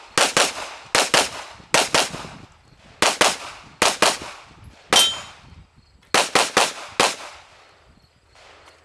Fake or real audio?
real